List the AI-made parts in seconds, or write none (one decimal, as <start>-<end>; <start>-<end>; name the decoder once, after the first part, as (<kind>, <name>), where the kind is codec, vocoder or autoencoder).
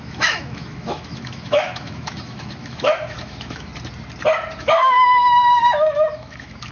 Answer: 0.0-3.7 (autoencoder, DAC-VAE); 4.6-6.7